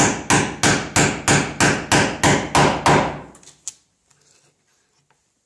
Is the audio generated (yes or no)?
no